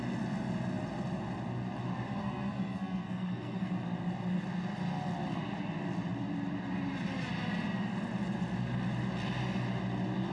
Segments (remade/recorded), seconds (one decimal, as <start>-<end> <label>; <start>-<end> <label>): 0.0-2.2 recorded; 2.2-3.8 remade; 3.8-10.3 recorded